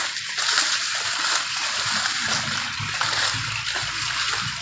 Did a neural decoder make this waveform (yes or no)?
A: no